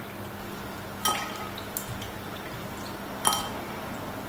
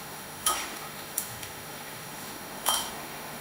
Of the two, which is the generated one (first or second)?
second